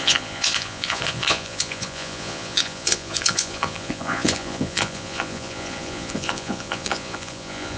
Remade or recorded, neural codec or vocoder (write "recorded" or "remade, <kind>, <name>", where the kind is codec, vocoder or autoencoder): remade, vocoder, Vocos